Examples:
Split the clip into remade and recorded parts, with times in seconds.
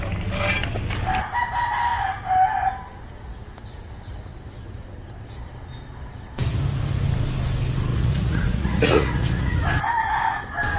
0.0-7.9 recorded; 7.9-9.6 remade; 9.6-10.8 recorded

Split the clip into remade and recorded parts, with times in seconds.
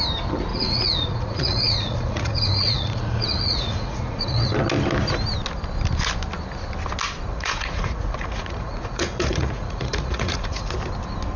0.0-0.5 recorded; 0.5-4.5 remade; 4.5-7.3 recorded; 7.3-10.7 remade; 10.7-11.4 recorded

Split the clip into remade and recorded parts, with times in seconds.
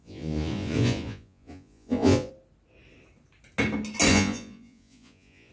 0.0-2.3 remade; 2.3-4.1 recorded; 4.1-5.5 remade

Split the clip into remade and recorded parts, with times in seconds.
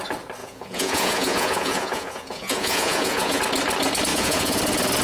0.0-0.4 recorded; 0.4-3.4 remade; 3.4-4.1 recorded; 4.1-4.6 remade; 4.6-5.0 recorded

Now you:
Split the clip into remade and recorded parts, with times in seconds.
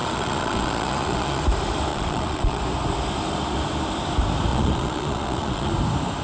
0.0-1.4 remade; 1.4-1.9 recorded; 1.9-2.6 remade; 2.6-4.5 recorded; 4.5-5.7 remade; 5.7-6.2 recorded